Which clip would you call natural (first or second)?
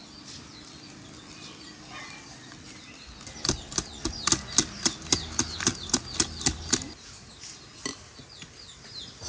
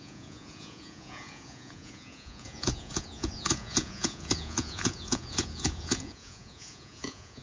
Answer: first